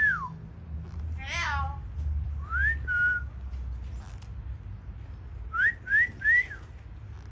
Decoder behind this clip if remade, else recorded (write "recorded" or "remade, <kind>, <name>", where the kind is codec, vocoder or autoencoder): recorded